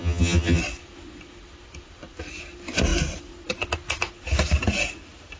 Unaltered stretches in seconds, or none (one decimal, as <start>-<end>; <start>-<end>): 0.6-5.4